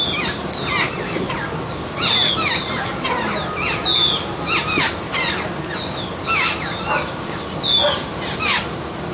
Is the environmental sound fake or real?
real